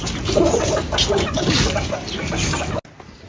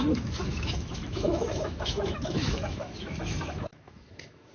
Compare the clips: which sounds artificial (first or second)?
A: second